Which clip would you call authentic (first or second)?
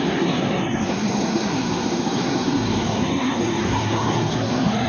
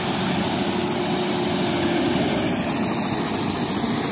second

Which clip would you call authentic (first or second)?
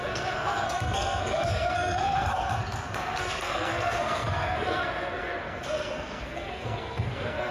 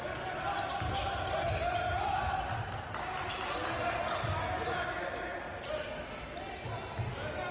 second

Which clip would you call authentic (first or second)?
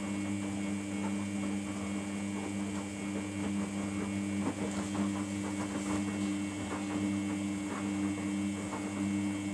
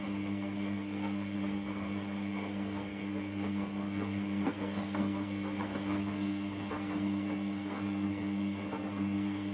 first